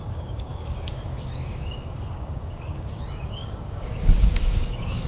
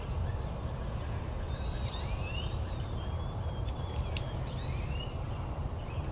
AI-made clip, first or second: first